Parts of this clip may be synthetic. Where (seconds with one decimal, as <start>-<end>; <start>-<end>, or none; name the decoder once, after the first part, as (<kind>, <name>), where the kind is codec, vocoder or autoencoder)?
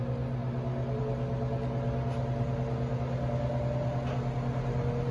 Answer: none